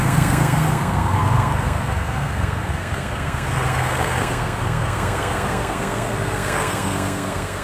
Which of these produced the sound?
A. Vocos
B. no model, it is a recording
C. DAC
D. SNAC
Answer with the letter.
D